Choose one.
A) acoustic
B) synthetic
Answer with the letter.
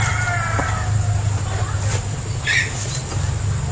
A